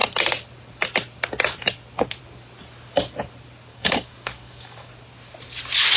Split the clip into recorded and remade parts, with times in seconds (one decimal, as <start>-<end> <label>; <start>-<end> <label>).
0.0-3.7 recorded; 3.7-4.9 remade; 4.9-6.0 recorded